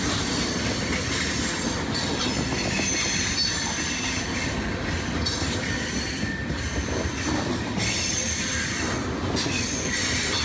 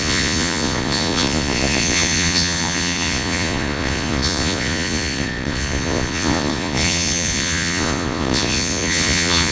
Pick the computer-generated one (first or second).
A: second